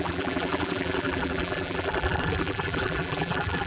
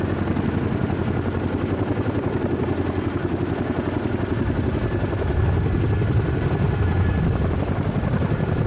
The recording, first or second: second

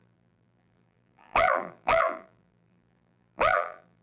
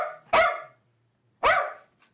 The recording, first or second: second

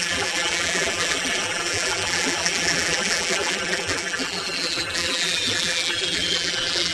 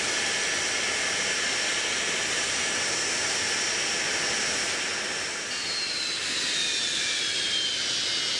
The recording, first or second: second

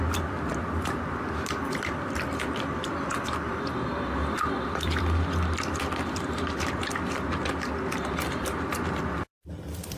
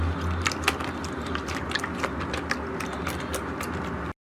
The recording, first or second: second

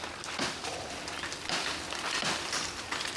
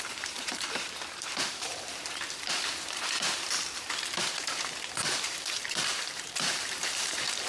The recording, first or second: first